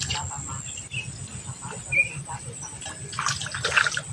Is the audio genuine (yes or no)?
yes